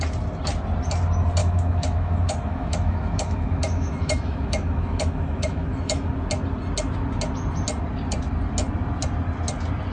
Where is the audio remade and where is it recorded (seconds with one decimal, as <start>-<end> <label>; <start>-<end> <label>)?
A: 0.0-1.4 recorded; 1.4-6.1 remade; 6.1-9.9 recorded